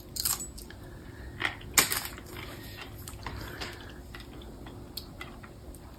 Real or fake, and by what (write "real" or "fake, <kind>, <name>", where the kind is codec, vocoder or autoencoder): real